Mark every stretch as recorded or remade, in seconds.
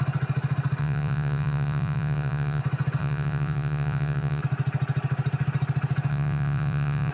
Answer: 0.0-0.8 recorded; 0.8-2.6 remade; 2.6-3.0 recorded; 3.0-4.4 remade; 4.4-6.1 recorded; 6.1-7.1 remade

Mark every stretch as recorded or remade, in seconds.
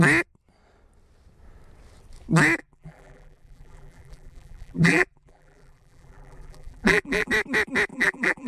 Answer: 0.0-2.6 recorded; 2.6-7.3 remade; 7.3-7.9 recorded; 7.9-8.5 remade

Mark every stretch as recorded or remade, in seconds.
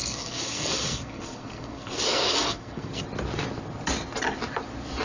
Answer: 0.0-3.0 remade; 3.0-5.0 recorded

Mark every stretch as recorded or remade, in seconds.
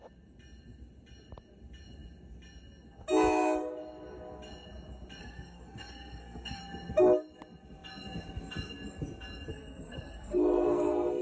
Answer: 0.0-5.2 recorded; 5.2-6.6 remade; 6.6-9.5 recorded; 9.5-11.2 remade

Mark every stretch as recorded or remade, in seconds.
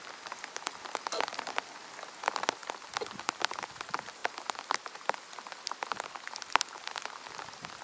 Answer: 0.0-1.3 recorded; 1.3-1.8 remade; 1.8-2.6 recorded; 2.6-3.2 remade; 3.2-7.8 recorded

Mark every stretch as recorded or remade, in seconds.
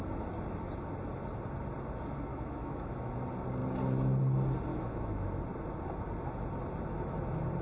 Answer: 0.0-2.3 recorded; 2.3-3.1 remade; 3.1-4.7 recorded; 4.7-5.4 remade; 5.4-7.6 recorded